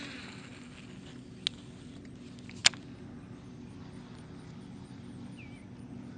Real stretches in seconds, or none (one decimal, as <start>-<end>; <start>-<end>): 0.0-6.2